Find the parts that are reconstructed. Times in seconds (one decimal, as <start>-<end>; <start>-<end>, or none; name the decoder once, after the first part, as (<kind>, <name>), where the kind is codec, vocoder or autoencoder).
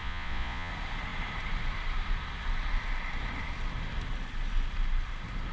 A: 0.0-0.7 (vocoder, Vocos)